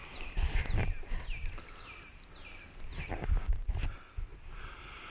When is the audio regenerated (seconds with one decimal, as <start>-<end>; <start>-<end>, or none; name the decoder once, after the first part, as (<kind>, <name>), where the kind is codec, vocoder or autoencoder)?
none